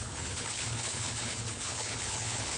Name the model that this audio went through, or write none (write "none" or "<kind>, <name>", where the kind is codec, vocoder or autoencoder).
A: codec, HILCodec